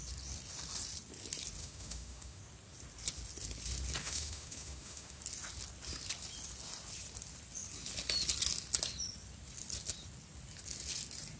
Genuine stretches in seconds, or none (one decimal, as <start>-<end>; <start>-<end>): 0.0-1.6; 2.4-4.0; 5.2-11.4